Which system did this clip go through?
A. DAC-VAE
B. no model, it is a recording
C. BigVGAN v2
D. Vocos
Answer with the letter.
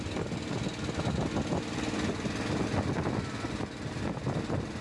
B